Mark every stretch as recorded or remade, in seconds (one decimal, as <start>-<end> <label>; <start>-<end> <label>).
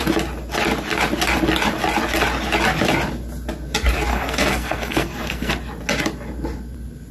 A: 0.0-4.1 recorded; 4.1-5.5 remade; 5.5-7.1 recorded